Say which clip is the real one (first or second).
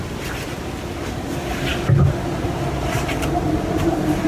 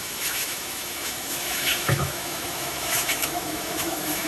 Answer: first